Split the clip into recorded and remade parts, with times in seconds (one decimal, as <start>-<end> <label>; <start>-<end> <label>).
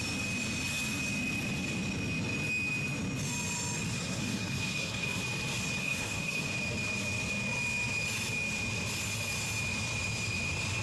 0.0-3.9 recorded; 3.9-5.2 remade; 5.2-5.8 recorded; 5.8-6.5 remade; 6.5-10.8 recorded